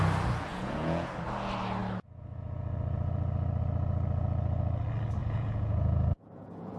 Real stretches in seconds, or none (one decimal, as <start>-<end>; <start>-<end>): 0.0-0.5; 1.1-5.2